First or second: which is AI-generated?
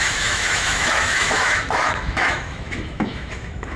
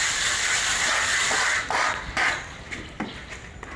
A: first